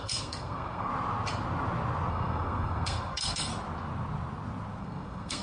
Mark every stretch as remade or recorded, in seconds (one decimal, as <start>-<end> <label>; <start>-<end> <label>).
0.0-0.9 remade; 0.9-2.1 recorded; 2.1-3.5 remade; 3.5-4.8 recorded; 4.8-5.4 remade